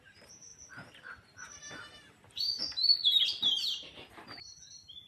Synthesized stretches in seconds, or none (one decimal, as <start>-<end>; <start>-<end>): 0.0-5.1